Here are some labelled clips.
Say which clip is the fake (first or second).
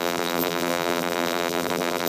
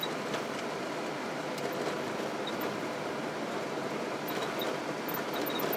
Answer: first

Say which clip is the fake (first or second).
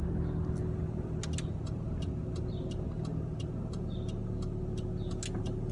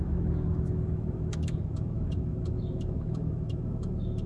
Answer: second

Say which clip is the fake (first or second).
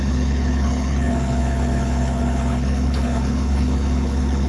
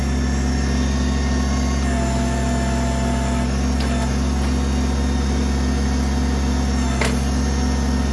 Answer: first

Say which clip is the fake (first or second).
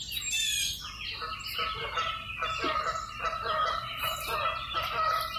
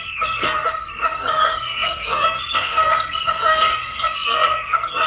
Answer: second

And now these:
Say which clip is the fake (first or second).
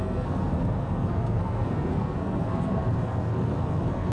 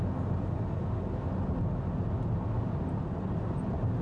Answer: first